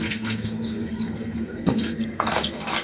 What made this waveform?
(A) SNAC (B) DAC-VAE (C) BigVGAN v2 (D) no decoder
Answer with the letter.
A